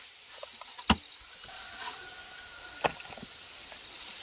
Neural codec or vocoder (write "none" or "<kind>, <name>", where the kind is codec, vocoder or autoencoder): none